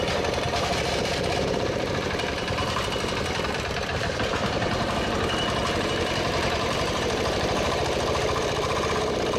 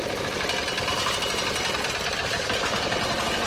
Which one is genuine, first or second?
second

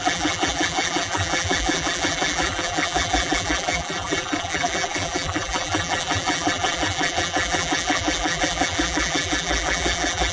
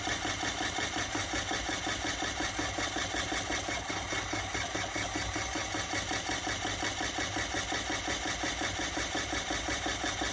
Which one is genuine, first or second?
second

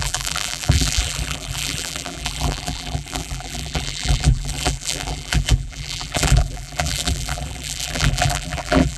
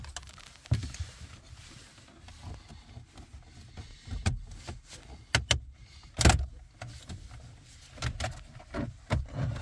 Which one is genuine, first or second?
second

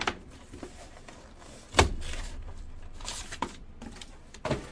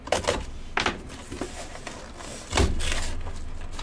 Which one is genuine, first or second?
second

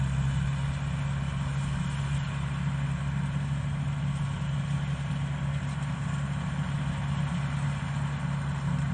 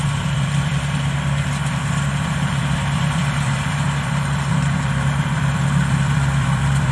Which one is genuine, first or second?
first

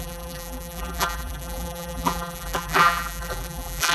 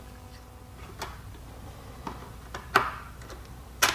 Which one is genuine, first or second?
second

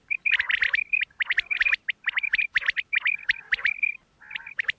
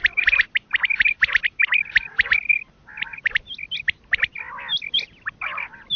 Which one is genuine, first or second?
first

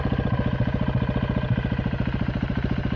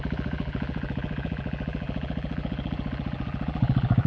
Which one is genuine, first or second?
first